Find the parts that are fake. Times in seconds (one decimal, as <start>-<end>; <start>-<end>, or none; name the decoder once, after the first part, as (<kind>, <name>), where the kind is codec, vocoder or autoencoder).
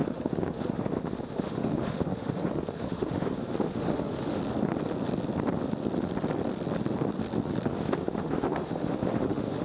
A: 0.0-4.4 (autoencoder, DAC-VAE); 7.7-9.6